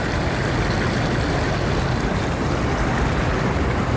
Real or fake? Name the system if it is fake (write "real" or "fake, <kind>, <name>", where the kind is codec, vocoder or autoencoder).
real